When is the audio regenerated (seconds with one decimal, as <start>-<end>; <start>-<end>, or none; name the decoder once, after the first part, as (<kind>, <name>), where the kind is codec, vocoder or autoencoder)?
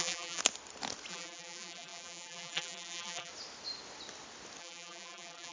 0.0-0.4 (vocoder, BigVGAN v2); 1.1-3.3; 4.6-5.5